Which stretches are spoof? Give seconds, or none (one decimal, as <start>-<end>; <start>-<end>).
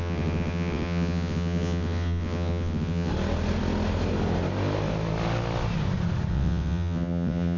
0.0-3.1; 6.3-7.6